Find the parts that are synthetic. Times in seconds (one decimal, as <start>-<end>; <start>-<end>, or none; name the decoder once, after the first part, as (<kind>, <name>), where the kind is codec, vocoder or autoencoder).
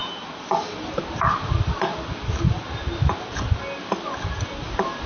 none